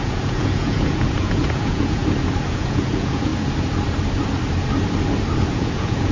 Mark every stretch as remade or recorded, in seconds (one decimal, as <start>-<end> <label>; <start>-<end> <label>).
0.0-2.0 remade; 2.0-2.5 recorded; 2.5-3.3 remade; 3.3-5.5 recorded; 5.5-6.1 remade